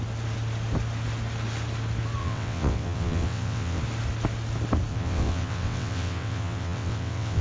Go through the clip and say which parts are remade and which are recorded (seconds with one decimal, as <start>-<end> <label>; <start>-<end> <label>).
0.0-2.2 recorded; 2.2-3.8 remade; 3.8-4.9 recorded; 4.9-7.4 remade